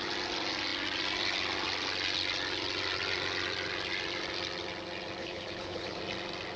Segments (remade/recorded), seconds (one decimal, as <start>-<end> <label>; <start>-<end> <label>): 0.0-5.2 recorded; 5.2-6.0 remade; 6.0-6.6 recorded